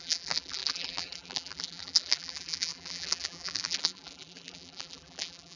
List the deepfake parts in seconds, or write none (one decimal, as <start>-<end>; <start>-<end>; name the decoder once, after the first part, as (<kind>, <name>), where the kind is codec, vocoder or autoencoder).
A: 0.0-5.6 (vocoder, BigVGAN v2)